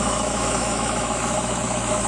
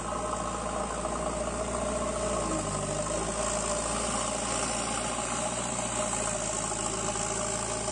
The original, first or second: second